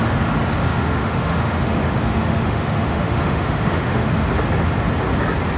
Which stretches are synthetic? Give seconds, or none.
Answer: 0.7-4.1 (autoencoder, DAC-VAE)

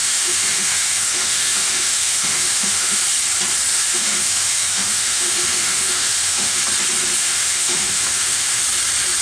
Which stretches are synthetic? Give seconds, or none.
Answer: 0.0-3.0 (autoencoder, DAC-VAE); 3.7-6.6; 7.2-8.6